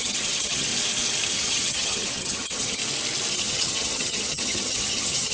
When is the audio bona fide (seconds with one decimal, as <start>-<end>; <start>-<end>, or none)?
0.7-1.3; 2.8-3.3